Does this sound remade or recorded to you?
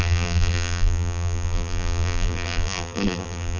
remade